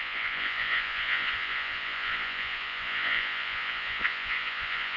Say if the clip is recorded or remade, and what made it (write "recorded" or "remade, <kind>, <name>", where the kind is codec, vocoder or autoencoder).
remade, vocoder, Vocos